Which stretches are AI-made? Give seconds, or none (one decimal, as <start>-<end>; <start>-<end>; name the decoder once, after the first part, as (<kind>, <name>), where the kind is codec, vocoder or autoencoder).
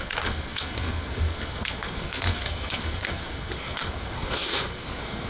0.0-5.3 (codec, SNAC)